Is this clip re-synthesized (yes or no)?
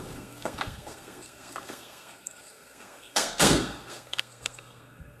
yes